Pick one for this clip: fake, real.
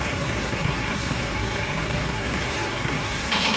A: fake